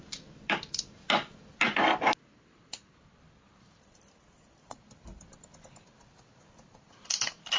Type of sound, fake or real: real